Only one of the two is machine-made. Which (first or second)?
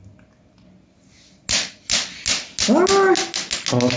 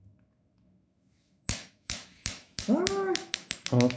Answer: second